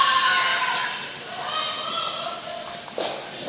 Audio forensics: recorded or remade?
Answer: recorded